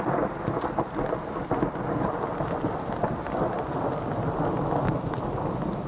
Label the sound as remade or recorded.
recorded